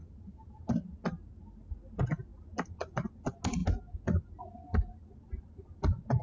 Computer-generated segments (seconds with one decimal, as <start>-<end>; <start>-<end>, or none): none